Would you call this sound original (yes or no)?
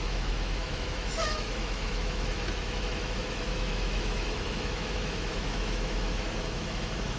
no